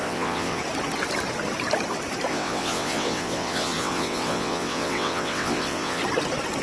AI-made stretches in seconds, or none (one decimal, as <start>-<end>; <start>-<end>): 0.0-0.6; 2.3-6.0